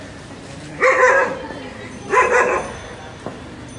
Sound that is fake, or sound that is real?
real